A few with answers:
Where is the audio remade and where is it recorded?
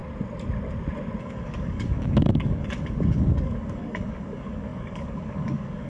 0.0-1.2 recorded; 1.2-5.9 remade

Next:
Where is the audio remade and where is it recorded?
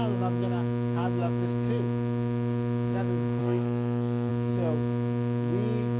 0.0-3.4 recorded; 3.4-4.3 remade; 4.3-6.0 recorded